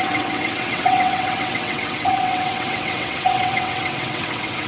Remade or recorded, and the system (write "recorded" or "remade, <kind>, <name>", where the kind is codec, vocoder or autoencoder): remade, vocoder, WaveNeXt